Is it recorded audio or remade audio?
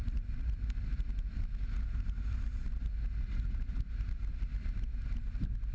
recorded